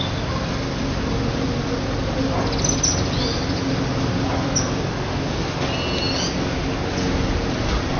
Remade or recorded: recorded